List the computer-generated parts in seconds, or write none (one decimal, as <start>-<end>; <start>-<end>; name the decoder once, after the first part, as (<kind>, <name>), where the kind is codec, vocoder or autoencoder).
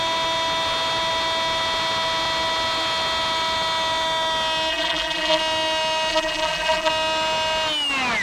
4.7-5.4 (vocoder, BigVGAN v2); 6.1-6.9